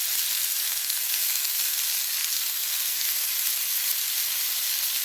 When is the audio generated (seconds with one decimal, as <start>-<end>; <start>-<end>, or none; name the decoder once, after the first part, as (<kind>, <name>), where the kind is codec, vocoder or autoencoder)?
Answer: 0.6-1.8 (codec, SNAC); 2.2-3.3